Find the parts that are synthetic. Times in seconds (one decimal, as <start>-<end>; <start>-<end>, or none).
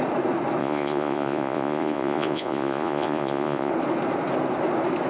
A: 0.6-3.7